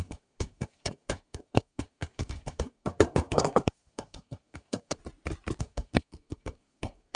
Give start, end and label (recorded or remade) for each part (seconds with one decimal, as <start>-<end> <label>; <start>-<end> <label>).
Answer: 0.0-5.0 remade; 5.0-5.6 recorded; 5.6-7.1 remade